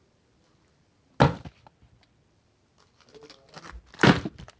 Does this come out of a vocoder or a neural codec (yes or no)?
no